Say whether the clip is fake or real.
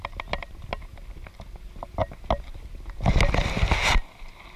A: real